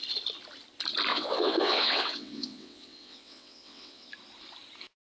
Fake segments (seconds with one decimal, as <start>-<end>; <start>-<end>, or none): 1.1-4.1

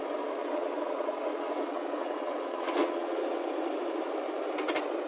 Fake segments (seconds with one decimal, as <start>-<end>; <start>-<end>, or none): 0.4-3.5

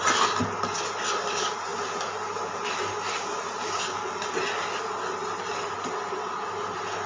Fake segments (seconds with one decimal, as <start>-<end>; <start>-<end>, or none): none

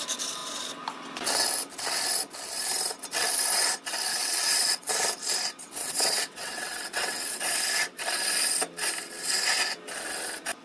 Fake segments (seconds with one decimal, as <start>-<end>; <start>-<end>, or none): 4.1-4.9; 5.8-7.4

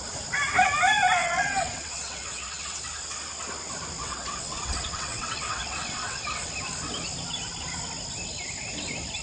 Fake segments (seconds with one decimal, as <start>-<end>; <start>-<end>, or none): 1.2-2.8; 4.0-6.5

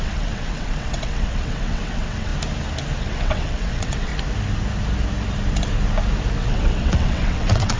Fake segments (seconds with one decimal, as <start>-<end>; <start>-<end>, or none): 0.0-2.3; 3.0-4.1; 6.4-7.8

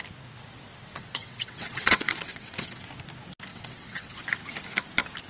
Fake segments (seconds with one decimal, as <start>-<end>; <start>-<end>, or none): 0.9-2.9; 3.5-4.2

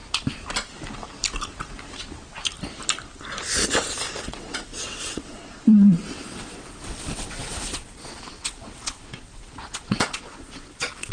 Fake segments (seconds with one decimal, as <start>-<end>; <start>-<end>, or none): 4.2-11.1